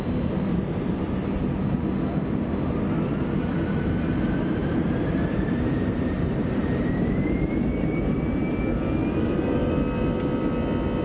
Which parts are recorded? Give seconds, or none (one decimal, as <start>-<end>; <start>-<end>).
0.0-4.6; 8.6-9.0; 9.7-11.0